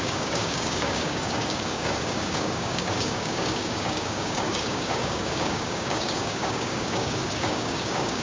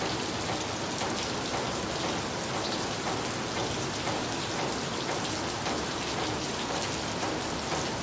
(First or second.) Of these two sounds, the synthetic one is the first